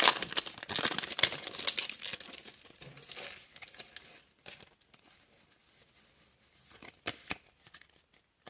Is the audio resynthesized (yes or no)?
no